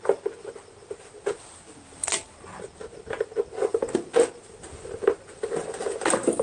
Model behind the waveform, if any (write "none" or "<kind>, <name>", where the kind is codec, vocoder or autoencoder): none